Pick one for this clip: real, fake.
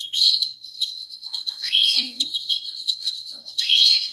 fake